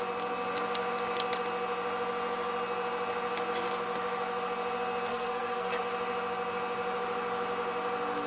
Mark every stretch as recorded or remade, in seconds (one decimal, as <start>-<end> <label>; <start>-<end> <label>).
0.0-5.1 recorded; 5.1-5.8 remade; 5.8-8.3 recorded